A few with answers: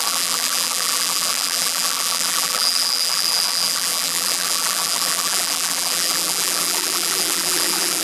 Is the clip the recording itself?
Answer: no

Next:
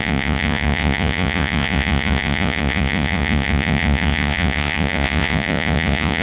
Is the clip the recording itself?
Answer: no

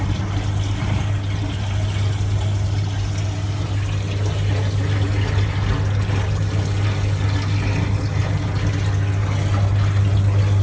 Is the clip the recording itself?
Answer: yes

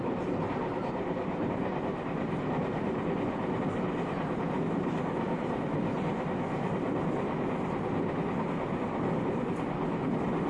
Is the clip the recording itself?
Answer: yes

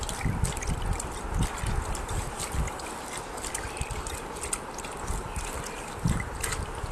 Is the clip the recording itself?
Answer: yes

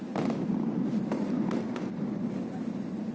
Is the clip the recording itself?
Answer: yes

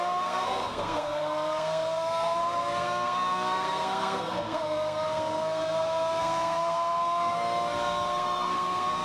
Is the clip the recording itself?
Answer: no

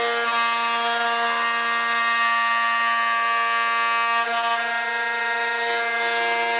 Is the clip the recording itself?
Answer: yes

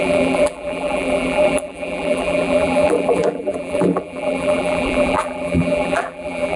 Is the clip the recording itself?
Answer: no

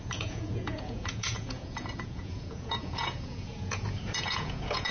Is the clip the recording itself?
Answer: no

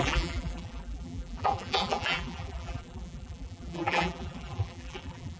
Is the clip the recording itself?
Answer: no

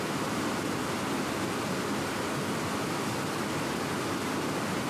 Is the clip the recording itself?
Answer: yes